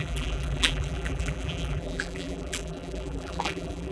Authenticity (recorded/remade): remade